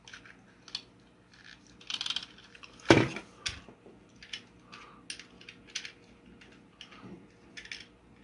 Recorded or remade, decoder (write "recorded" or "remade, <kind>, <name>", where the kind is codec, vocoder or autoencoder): recorded